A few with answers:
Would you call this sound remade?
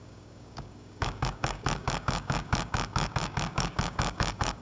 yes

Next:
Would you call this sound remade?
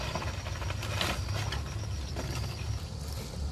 no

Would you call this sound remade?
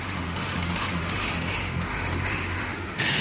yes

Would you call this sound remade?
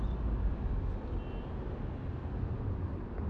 no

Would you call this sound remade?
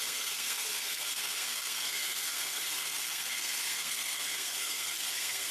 yes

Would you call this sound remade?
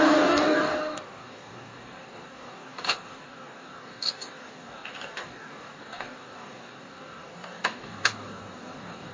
yes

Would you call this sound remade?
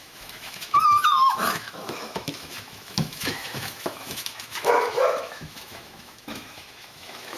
yes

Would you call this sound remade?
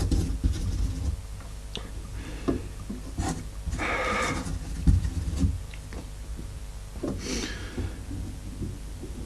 no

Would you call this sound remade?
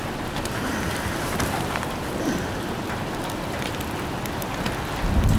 no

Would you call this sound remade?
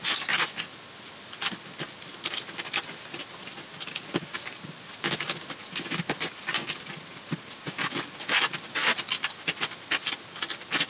no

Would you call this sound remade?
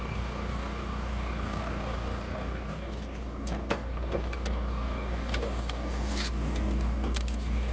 yes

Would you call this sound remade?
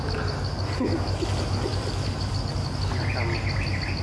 no